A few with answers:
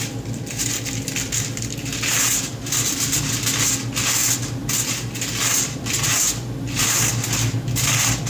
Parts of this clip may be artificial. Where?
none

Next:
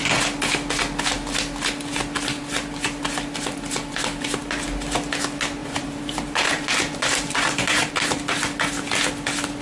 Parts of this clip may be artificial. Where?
5.6-7.9 (vocoder, BigVGAN v2)

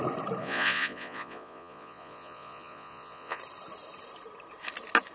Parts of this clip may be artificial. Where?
0.4-3.4 (vocoder, Vocos)

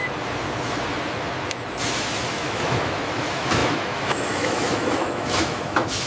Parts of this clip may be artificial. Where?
2.3-6.1 (autoencoder, DAC-VAE)